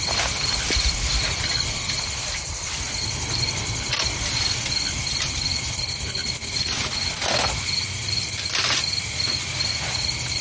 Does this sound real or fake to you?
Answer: real